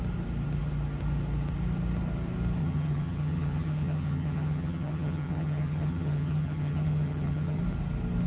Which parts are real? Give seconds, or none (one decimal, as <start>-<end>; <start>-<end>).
0.0-2.6; 7.6-8.3